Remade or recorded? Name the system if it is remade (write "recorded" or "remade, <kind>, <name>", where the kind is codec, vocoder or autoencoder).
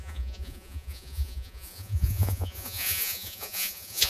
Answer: remade, vocoder, Vocos